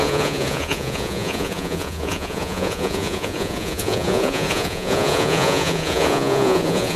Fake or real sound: fake